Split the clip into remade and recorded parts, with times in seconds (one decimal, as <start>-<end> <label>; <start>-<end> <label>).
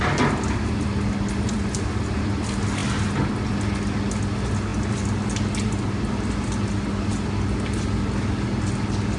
0.0-9.2 recorded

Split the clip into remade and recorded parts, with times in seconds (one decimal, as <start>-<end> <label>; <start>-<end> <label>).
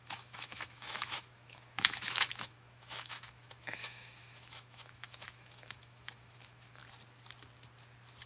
0.0-6.8 remade; 6.8-8.3 recorded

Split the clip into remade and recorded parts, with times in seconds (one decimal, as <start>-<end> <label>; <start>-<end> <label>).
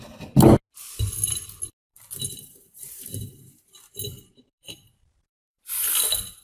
0.0-1.9 recorded; 1.9-5.7 remade; 5.7-6.4 recorded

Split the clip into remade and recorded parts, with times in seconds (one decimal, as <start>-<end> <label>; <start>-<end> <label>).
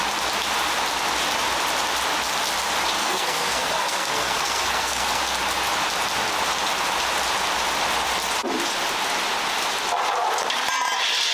0.0-3.0 recorded; 3.0-5.2 remade; 5.2-11.3 recorded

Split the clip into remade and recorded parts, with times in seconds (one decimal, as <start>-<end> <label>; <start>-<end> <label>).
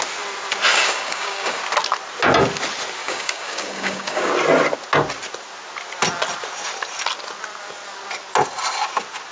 0.0-0.7 recorded; 0.7-1.6 remade; 1.6-3.0 recorded; 3.0-4.3 remade; 4.3-9.3 recorded